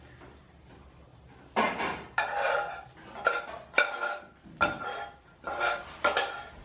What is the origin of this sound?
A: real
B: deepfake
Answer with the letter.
A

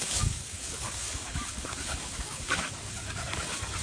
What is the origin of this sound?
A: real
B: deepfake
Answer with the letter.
B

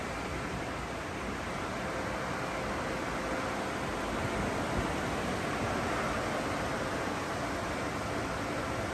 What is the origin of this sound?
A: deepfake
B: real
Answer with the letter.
B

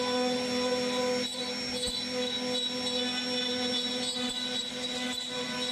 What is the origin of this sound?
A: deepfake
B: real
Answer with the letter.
B